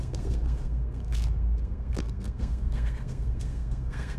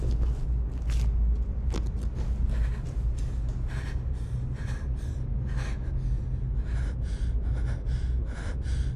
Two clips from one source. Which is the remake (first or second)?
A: first